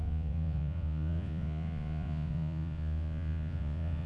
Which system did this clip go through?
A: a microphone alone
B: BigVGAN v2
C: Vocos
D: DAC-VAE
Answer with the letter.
C